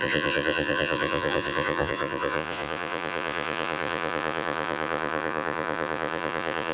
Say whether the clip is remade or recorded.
remade